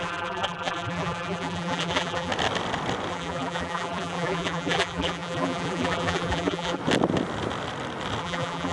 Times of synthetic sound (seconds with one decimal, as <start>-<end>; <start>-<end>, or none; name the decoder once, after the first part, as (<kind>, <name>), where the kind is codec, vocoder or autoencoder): 0.0-2.3 (vocoder, BigVGAN v2); 3.1-6.8; 8.2-8.7